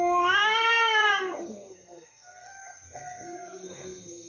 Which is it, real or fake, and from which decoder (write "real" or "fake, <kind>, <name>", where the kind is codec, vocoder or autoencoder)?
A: fake, codec, SNAC